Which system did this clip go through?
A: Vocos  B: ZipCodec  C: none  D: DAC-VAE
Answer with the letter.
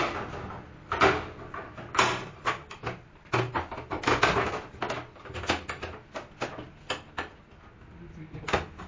C